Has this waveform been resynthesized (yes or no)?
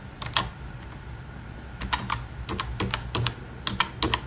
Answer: no